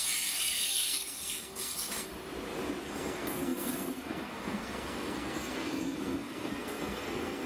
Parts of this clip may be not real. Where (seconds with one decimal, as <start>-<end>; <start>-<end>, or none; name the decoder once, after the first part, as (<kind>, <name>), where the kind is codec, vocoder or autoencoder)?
0.0-2.1 (codec, SNAC); 2.8-7.5